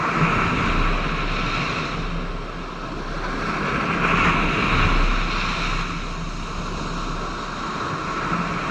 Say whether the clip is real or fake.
real